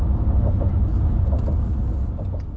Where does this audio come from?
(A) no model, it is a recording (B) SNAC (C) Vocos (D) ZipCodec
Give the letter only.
A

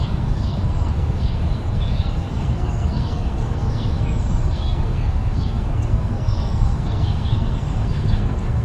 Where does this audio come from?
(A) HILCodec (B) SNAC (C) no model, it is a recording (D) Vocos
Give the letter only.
B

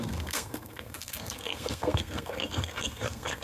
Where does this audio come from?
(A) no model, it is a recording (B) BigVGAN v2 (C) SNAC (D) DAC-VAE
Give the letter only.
C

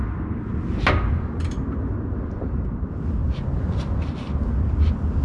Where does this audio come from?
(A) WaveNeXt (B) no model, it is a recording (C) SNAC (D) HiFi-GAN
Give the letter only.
B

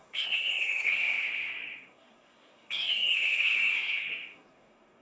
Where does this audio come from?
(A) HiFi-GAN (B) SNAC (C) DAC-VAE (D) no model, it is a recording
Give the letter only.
B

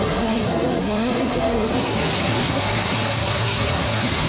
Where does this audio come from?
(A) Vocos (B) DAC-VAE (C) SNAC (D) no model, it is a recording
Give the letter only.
C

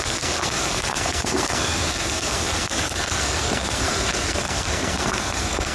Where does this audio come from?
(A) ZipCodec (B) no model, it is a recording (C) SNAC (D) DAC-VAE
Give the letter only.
C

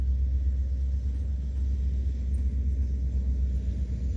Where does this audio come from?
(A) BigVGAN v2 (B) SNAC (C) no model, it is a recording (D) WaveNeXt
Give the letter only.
C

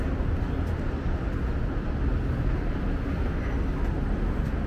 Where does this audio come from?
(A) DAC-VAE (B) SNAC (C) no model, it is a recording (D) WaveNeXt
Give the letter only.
C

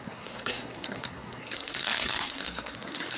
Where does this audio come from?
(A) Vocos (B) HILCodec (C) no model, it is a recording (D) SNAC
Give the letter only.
D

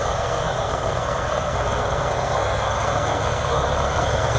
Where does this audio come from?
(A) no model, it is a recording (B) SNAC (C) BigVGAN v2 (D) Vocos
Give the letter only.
B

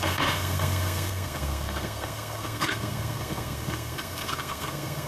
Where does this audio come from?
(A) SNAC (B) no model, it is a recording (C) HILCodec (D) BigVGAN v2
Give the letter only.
A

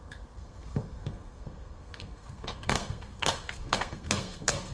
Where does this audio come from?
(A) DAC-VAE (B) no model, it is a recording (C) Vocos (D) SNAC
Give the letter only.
D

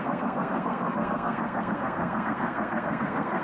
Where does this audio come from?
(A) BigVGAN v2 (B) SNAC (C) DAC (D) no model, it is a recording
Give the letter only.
B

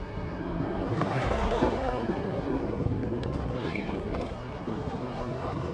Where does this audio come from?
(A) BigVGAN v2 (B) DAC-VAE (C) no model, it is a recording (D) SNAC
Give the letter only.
D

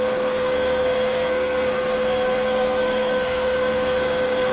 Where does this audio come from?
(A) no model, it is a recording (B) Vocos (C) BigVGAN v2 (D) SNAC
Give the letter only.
D